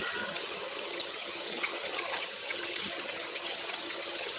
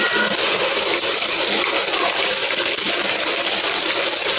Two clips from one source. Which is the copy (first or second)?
first